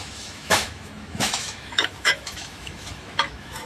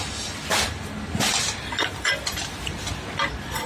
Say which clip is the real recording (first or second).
second